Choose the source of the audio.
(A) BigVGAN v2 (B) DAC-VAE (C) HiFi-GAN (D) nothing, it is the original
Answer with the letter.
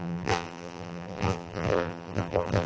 A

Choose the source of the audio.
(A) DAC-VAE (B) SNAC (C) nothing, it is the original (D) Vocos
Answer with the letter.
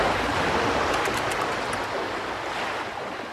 C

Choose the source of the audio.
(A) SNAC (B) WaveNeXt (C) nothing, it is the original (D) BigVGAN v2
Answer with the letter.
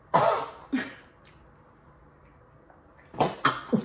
C